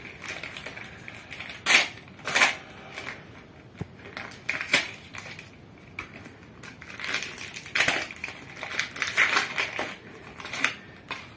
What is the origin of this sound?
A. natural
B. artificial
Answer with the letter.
A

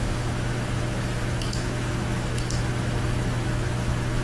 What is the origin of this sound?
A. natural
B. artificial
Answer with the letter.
B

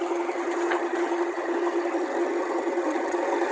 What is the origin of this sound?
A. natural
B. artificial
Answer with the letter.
B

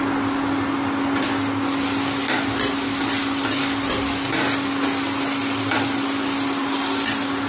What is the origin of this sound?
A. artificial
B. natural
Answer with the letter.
B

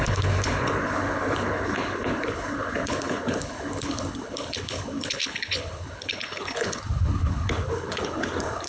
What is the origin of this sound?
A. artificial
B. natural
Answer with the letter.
A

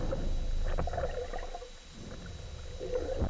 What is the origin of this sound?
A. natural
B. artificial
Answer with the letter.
A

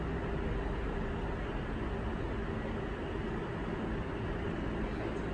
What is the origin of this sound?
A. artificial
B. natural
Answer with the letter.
B